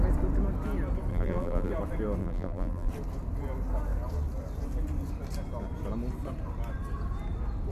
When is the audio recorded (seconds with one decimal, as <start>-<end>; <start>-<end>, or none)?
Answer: 0.0-1.1; 1.7-2.2; 2.9-7.7